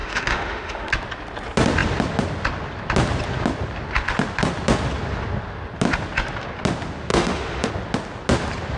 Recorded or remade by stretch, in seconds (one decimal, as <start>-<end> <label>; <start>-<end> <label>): 0.0-0.9 remade; 0.9-7.1 recorded; 7.1-7.7 remade; 7.7-8.8 recorded